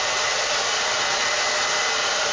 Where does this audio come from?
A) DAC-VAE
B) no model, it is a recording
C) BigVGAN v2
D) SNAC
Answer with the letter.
B